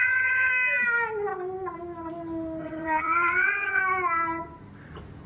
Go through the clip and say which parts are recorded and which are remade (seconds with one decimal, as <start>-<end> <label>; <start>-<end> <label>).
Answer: 0.0-0.5 remade; 0.5-2.6 recorded; 2.6-3.8 remade; 3.8-5.3 recorded